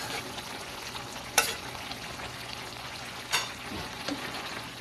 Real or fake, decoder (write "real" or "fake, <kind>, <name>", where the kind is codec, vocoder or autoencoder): fake, vocoder, Vocos